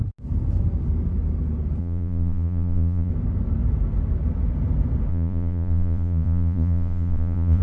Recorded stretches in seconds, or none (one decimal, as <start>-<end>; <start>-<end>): 0.0-1.8; 3.1-5.1